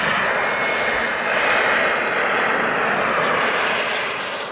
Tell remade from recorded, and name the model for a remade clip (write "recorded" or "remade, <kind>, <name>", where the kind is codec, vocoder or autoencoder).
recorded